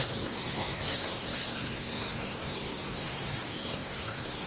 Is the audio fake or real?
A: fake